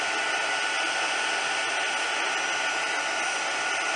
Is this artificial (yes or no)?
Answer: no